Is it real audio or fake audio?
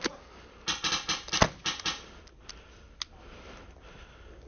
real